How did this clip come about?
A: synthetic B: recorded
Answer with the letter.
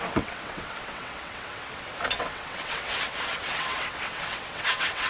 A